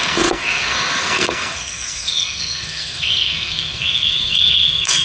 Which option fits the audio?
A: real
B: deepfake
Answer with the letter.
B